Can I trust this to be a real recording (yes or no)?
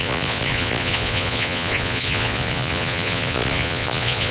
no